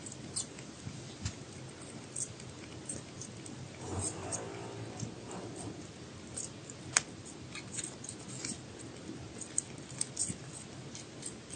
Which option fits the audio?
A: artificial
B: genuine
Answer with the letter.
B